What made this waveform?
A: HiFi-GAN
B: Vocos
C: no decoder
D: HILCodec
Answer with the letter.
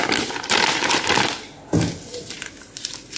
C